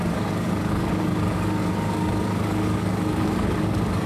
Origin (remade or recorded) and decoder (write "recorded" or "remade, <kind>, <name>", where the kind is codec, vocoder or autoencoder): remade, codec, DAC